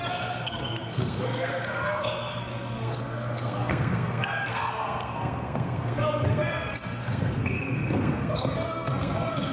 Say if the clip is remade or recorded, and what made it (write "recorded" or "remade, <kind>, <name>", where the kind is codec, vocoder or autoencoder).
remade, codec, SNAC